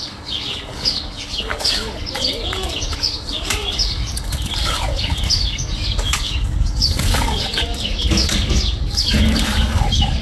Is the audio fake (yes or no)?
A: yes